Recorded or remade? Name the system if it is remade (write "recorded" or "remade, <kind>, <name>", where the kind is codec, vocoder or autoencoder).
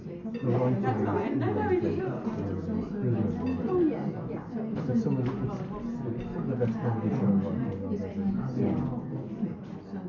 recorded